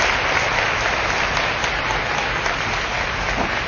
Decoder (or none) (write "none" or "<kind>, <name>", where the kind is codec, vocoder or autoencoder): none